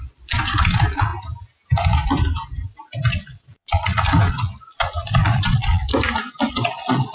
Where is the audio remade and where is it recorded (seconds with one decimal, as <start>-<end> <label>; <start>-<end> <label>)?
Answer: 0.0-1.1 remade; 1.1-3.1 recorded; 3.1-5.9 remade; 5.9-6.5 recorded; 6.5-7.1 remade